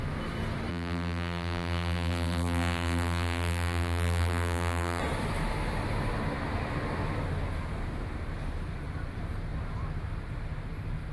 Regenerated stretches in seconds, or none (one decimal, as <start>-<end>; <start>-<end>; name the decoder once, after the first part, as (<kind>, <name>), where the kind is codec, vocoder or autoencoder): 0.7-5.0 (vocoder, BigVGAN v2)